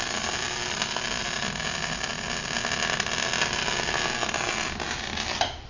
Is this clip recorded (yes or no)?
yes